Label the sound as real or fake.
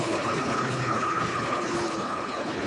fake